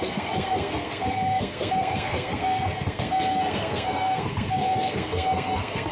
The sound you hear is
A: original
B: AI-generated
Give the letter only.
B